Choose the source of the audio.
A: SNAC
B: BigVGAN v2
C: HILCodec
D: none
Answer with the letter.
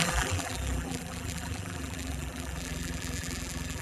B